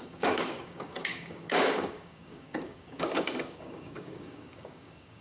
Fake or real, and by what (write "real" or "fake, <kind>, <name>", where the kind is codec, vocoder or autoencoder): fake, codec, DAC